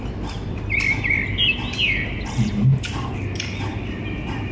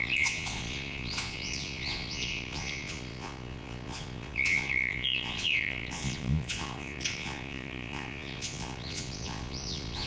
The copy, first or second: second